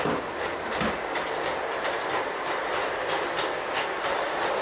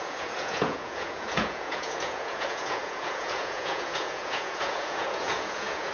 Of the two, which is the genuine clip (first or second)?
first